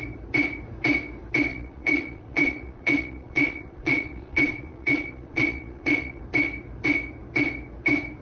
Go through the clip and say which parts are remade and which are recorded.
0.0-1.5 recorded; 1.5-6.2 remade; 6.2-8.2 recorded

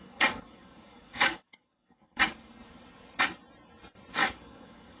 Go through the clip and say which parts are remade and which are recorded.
0.0-2.2 remade; 2.2-4.2 recorded; 4.2-5.0 remade

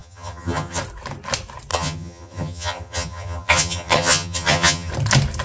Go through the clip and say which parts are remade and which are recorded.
0.0-0.8 remade; 0.8-1.7 recorded; 1.7-4.9 remade; 4.9-5.4 recorded

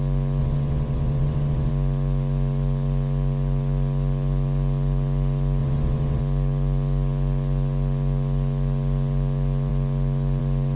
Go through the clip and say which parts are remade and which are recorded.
0.0-0.4 recorded; 0.4-1.7 remade; 1.7-5.6 recorded; 5.6-6.2 remade; 6.2-10.8 recorded

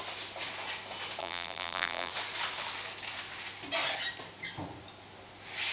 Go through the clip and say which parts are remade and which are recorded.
0.0-1.2 recorded; 1.2-2.1 remade; 2.1-5.7 recorded

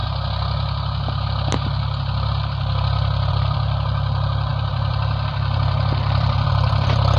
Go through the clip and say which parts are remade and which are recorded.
0.0-3.3 recorded; 3.3-7.2 remade

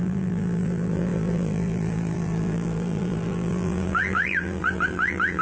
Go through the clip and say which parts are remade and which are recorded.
0.0-5.4 remade